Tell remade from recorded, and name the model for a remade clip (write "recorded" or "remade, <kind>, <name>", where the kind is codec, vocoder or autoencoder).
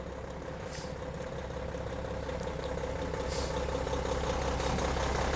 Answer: recorded